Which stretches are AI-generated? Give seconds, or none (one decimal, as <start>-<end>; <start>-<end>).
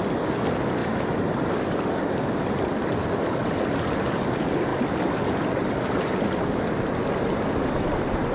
none